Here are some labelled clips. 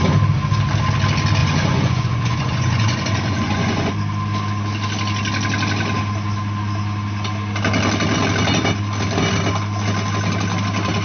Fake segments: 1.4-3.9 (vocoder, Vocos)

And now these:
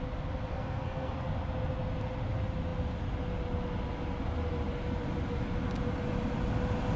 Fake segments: 0.5-1.1 (codec, SNAC)

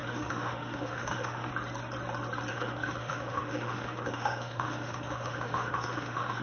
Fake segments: 0.0-1.5 (autoencoder, DAC-VAE); 2.5-6.4

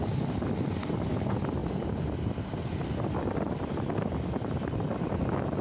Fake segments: none